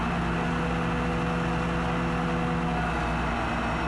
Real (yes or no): yes